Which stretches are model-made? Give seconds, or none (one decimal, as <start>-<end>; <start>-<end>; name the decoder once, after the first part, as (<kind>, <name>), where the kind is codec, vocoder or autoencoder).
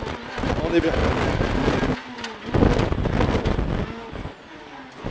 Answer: none